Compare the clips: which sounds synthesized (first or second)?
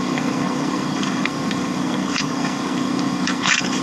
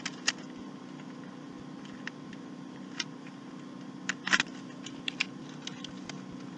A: first